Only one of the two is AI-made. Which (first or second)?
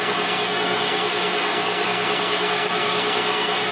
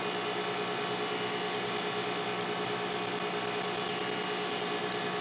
first